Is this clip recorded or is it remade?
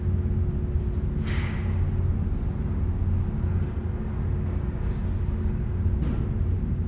recorded